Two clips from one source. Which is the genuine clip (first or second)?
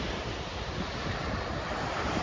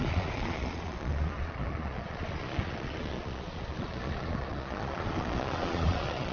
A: first